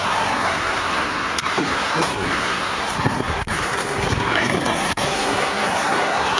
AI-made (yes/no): yes